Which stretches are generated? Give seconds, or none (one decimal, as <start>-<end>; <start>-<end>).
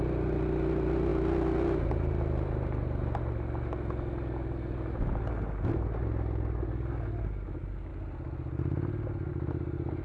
none